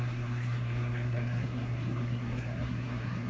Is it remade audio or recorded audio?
remade